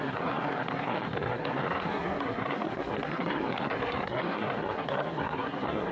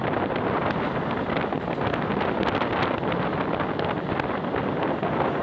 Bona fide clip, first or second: second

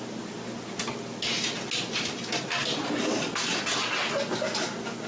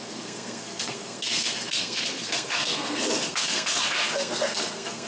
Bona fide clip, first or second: first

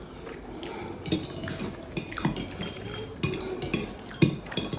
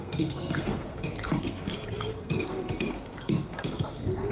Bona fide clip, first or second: first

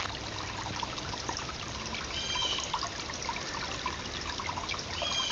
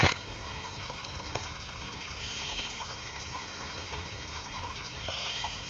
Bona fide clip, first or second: first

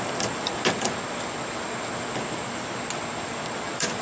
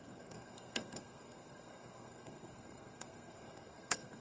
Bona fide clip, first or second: first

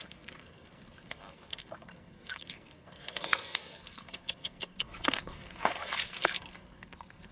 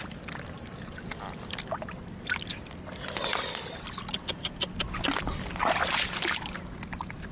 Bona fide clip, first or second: second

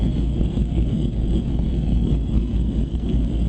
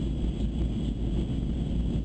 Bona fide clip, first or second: second